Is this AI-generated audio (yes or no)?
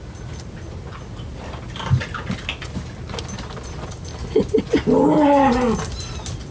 no